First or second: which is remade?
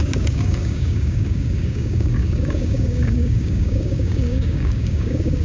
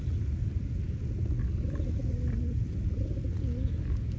first